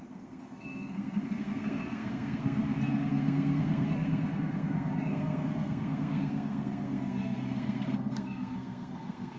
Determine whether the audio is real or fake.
fake